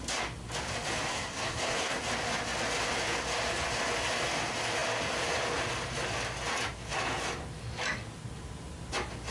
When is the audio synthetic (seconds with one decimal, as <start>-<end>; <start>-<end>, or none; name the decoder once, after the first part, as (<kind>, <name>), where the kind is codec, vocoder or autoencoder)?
1.1-2.0 (codec, SNAC)